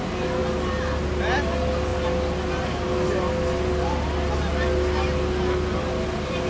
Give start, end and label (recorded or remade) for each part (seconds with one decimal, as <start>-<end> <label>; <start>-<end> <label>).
0.0-6.5 recorded

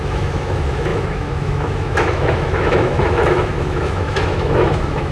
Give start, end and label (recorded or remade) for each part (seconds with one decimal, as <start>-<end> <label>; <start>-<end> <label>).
0.0-5.1 remade

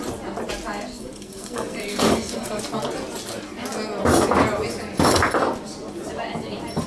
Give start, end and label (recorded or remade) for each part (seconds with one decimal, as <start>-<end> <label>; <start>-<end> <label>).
0.0-0.9 recorded; 0.9-2.6 remade; 2.6-6.9 recorded

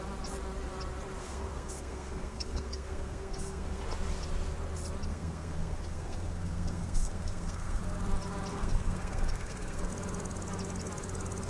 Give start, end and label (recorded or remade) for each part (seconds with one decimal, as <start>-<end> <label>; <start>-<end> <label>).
0.0-1.2 recorded; 1.2-3.8 remade; 3.8-5.1 recorded; 5.1-7.8 remade; 7.8-8.5 recorded; 8.5-9.9 remade; 9.9-11.5 recorded

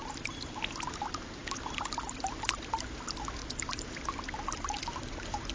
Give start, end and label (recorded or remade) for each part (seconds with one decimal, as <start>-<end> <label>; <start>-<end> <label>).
0.0-5.5 recorded

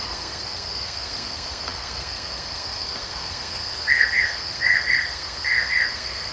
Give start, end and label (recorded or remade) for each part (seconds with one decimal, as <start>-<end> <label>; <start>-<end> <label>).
0.0-6.3 remade

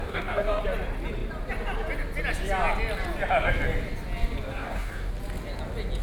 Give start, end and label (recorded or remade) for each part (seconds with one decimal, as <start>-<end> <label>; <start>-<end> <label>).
0.0-0.6 remade; 0.6-4.5 recorded; 4.5-5.1 remade; 5.1-6.0 recorded

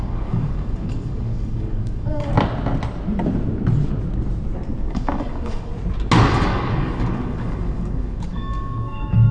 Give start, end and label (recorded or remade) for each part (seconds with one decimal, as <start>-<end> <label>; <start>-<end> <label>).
0.0-2.3 remade; 2.3-4.9 recorded; 4.9-5.7 remade; 5.7-6.3 recorded; 6.3-9.3 remade